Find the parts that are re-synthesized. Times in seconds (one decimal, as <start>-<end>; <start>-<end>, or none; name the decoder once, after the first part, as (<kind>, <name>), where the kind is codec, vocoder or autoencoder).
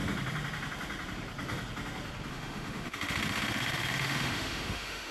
2.3-5.1 (autoencoder, DAC-VAE)